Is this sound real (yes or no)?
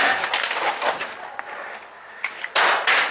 yes